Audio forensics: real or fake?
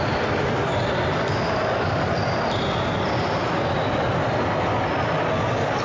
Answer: real